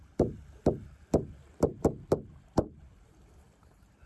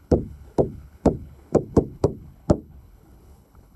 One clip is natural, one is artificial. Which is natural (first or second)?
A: first